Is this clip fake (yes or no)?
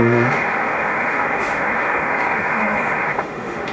yes